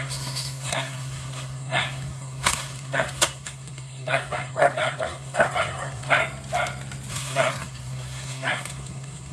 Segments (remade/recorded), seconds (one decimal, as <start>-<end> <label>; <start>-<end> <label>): 0.0-6.2 remade; 6.2-7.1 recorded; 7.1-9.3 remade